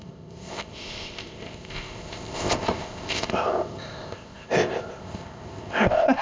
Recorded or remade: remade